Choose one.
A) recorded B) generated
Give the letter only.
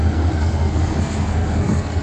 B